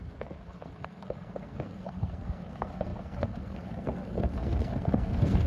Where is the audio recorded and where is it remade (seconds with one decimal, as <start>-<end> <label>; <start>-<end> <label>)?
0.0-5.5 remade